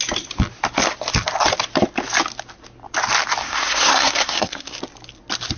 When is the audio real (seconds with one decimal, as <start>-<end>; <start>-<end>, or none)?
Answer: 0.0-3.4; 4.8-5.6